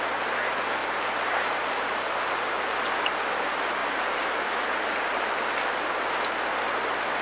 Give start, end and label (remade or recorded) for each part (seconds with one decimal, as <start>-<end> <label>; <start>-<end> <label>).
0.0-0.8 recorded; 0.8-2.9 remade; 2.9-3.8 recorded; 3.8-6.1 remade; 6.1-7.2 recorded